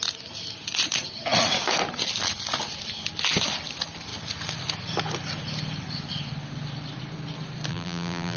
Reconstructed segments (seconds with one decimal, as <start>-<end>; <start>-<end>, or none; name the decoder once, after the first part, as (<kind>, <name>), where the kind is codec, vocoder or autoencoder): 7.7-8.4 (vocoder, BigVGAN v2)